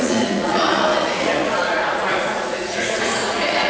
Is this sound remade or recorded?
remade